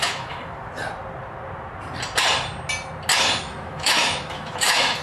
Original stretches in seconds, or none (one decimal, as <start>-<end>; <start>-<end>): 0.4-3.4